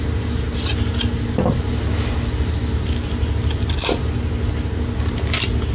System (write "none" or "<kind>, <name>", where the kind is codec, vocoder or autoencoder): none